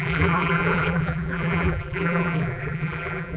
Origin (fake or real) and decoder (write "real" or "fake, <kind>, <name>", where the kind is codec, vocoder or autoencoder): fake, vocoder, BigVGAN v2